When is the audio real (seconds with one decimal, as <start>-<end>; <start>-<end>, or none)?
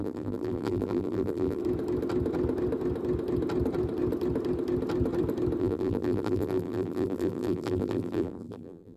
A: 1.6-5.6